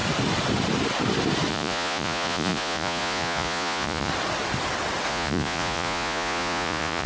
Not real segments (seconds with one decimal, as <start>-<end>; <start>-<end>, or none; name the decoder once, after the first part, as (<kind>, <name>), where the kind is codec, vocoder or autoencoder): 1.5-4.1 (vocoder, Vocos); 5.1-7.1